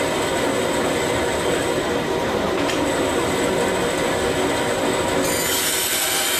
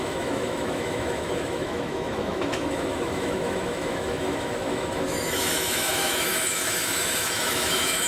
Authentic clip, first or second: first